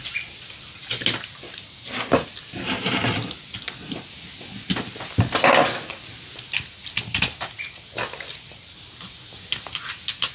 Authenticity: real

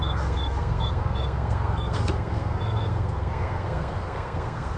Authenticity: fake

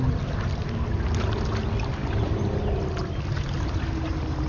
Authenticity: real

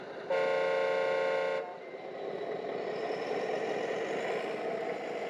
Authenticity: real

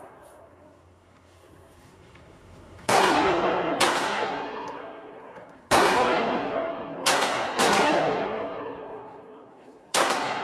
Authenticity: fake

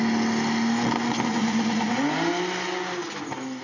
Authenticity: real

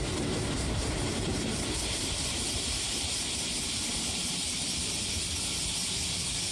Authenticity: real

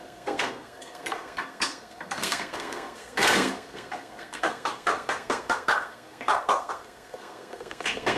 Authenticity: fake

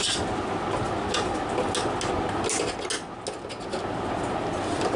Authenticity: real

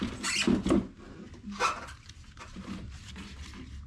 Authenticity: real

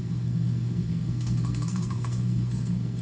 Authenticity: fake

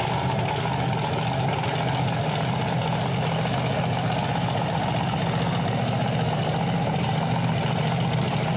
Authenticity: real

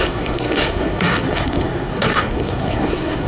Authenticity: fake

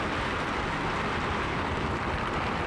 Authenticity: real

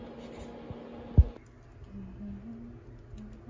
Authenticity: real